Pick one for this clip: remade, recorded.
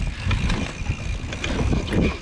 recorded